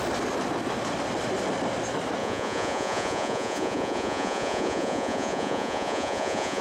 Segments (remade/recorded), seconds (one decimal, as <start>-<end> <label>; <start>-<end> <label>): 0.0-2.2 recorded; 2.2-6.6 remade